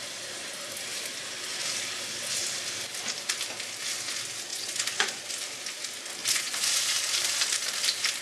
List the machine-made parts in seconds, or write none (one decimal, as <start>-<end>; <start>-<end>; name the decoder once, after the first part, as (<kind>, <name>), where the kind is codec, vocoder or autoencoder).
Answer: 4.5-5.3 (vocoder, Vocos); 6.2-6.9